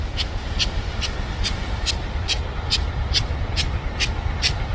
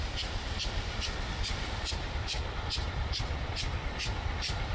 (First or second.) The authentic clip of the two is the first